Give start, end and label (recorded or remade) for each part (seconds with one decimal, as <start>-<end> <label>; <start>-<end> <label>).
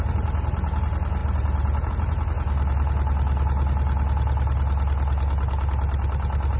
0.0-6.6 recorded